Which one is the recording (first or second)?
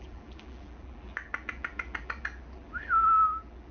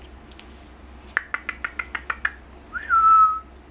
second